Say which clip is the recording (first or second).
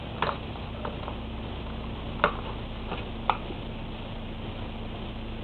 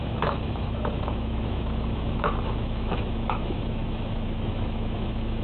first